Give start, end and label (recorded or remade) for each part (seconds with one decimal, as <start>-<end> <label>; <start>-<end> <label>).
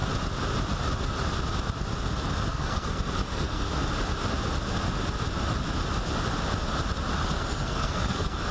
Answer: 0.0-2.5 recorded; 2.5-3.7 remade; 3.7-7.2 recorded; 7.2-8.5 remade